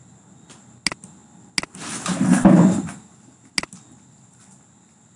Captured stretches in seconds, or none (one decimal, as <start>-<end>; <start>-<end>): 0.0-5.2